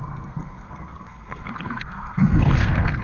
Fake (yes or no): yes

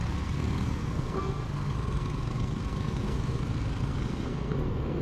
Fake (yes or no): yes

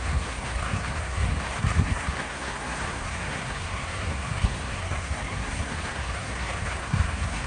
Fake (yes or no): yes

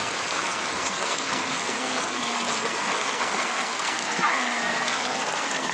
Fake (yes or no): yes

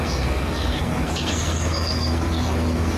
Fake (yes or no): yes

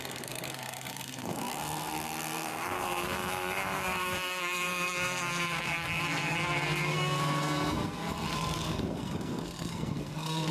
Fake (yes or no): yes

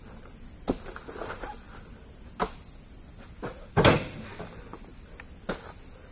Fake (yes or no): no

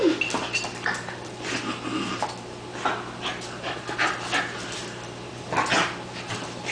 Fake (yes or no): no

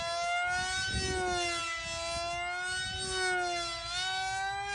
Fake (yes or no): no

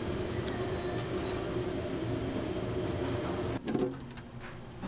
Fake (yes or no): no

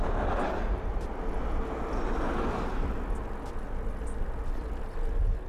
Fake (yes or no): no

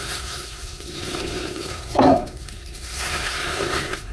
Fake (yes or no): yes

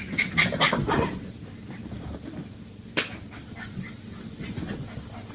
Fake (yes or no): no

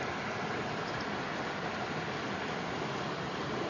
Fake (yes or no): no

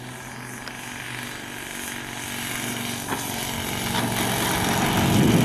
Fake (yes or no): no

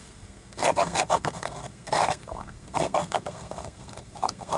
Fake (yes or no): yes